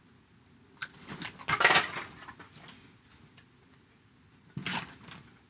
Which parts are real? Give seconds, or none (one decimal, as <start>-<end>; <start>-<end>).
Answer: 0.0-5.5